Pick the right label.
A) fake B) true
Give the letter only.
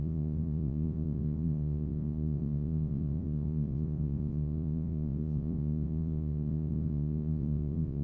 A